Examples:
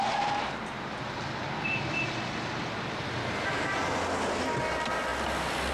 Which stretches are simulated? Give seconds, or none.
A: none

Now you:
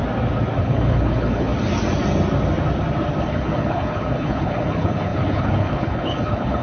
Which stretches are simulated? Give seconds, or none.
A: 0.6-1.5 (codec, HILCodec); 3.2-6.6

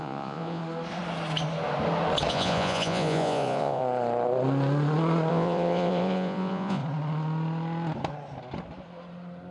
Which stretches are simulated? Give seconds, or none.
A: 0.0-0.6 (vocoder, Vocos); 2.3-3.8; 5.3-6.8

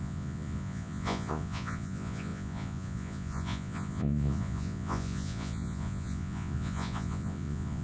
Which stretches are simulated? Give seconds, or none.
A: 0.0-7.8 (vocoder, Vocos)

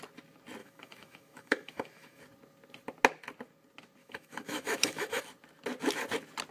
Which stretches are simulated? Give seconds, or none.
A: 0.6-2.2 (autoencoder, DAC-VAE); 4.0-5.2

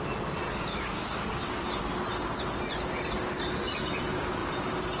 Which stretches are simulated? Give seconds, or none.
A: 0.7-1.8 (codec, DAC)